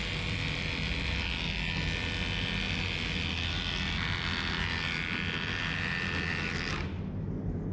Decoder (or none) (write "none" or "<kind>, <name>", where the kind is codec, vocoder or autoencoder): none